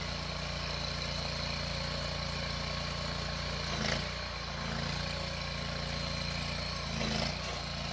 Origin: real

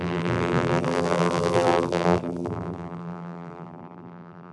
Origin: fake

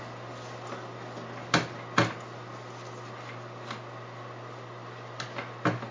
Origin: real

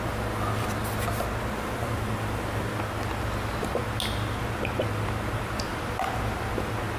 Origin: real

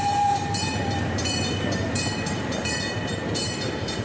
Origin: fake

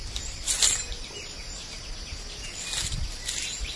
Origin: real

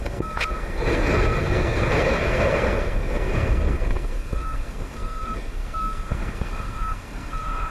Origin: fake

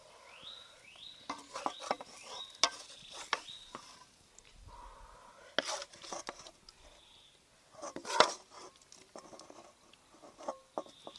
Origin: real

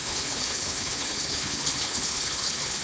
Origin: fake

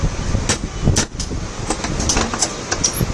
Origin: real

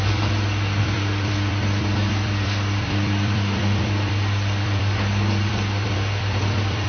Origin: fake